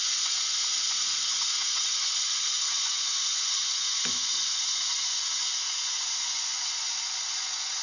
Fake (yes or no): yes